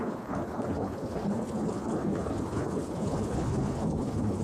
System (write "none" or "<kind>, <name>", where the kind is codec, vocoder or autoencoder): codec, HILCodec